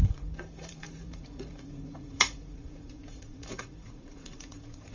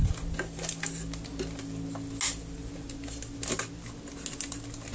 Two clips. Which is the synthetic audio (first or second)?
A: first